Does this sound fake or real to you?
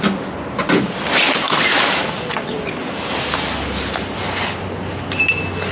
real